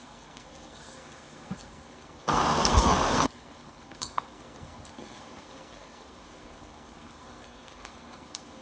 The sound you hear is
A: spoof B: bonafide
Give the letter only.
A